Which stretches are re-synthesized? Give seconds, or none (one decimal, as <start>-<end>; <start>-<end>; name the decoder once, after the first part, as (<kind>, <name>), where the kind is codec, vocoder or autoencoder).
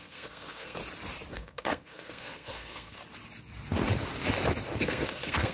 0.0-0.8 (codec, SNAC); 1.3-3.0; 4.8-5.5